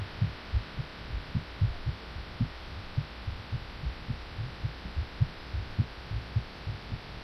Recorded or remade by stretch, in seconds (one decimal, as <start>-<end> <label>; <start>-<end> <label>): 0.0-7.2 recorded